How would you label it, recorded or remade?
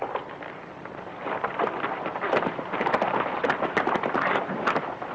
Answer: remade